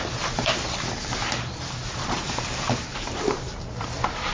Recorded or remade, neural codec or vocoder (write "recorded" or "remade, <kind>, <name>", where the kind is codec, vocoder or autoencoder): remade, vocoder, BigVGAN v2